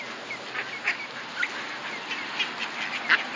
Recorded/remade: recorded